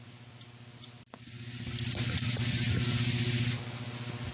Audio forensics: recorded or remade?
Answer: recorded